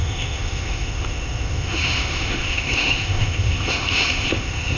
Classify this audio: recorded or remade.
remade